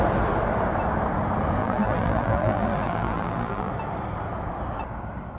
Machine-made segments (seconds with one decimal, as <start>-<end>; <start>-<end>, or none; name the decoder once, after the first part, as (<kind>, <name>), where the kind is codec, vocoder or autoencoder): 1.6-3.7 (vocoder, BigVGAN v2)